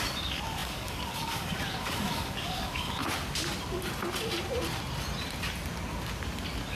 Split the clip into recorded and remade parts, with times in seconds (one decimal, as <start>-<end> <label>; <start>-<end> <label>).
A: 0.0-3.0 remade; 3.0-6.7 recorded